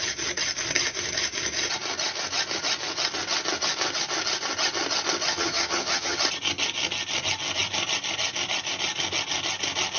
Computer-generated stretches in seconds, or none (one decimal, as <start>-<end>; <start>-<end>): 5.3-6.2